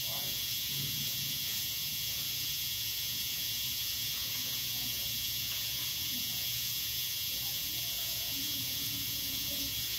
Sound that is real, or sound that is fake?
fake